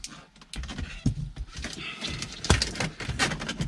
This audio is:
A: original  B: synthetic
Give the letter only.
A